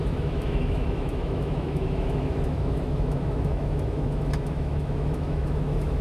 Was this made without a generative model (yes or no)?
no